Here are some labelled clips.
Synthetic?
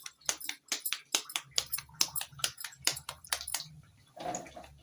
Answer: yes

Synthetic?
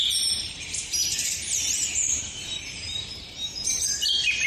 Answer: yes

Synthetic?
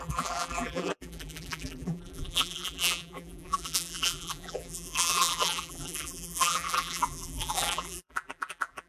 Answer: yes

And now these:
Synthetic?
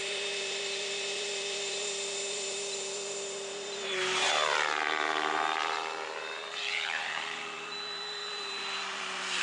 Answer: yes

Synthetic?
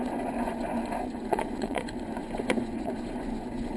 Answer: yes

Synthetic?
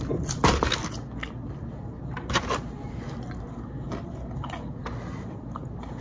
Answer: no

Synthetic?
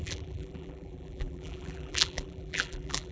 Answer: yes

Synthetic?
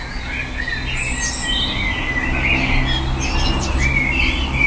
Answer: no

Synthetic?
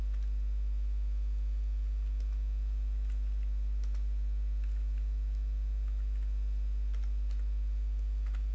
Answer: no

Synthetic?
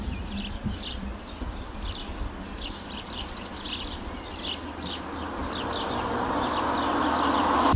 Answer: yes